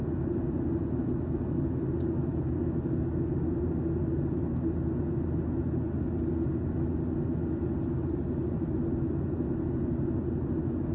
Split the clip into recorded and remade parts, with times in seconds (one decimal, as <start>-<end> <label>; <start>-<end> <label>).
0.0-10.9 recorded